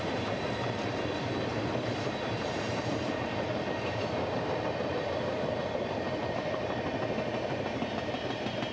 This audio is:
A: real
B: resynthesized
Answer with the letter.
B